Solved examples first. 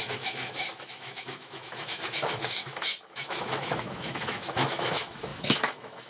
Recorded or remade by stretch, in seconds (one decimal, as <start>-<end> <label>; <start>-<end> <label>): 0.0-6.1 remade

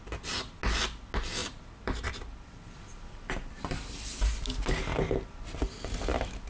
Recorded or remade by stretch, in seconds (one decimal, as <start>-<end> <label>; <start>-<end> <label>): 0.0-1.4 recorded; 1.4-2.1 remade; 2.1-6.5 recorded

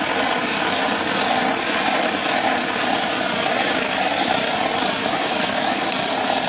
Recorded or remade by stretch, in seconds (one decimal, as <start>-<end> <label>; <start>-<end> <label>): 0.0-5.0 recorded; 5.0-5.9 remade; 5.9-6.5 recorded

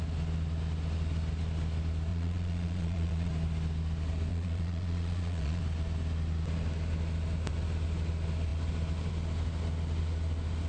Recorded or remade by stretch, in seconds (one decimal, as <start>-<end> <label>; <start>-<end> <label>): 0.0-2.1 recorded; 2.1-3.3 remade; 3.3-4.3 recorded; 4.3-5.6 remade; 5.6-10.7 recorded

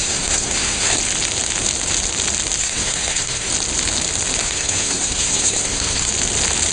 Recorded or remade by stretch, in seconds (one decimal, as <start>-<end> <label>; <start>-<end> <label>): 0.0-1.0 remade; 1.0-2.6 recorded; 2.6-3.5 remade; 3.5-4.4 recorded; 4.4-6.1 remade; 6.1-6.7 recorded

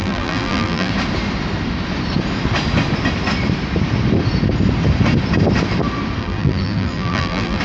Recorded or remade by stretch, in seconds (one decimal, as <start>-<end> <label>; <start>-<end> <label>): 0.0-0.9 remade; 0.9-6.2 recorded; 6.2-7.6 remade

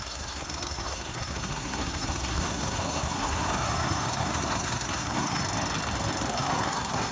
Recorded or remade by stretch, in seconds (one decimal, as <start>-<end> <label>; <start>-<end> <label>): 0.0-5.4 remade; 5.4-6.3 recorded; 6.3-7.1 remade

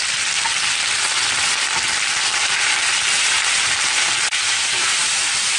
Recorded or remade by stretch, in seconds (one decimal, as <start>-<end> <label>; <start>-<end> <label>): 0.0-2.3 recorded; 2.3-4.1 remade; 4.1-5.6 recorded